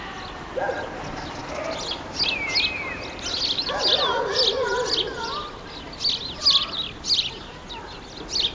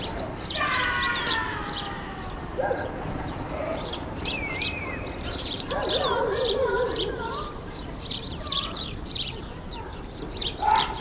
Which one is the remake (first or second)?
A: second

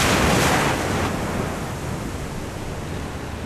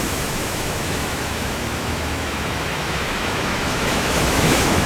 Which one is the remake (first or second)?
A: second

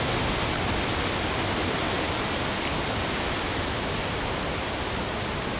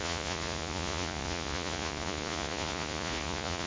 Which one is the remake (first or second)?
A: second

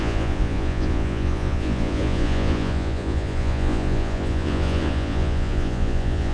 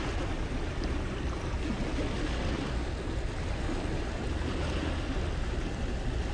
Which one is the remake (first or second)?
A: first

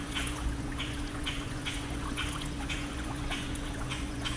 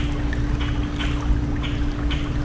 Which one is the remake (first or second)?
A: first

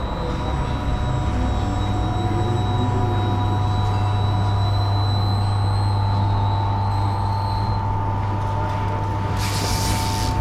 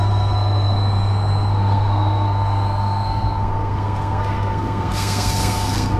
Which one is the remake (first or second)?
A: second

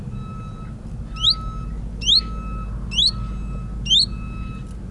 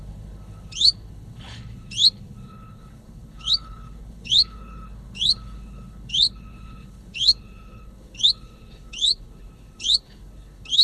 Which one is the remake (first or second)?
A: second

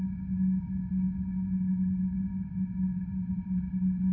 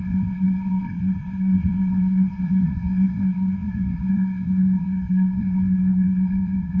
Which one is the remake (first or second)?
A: second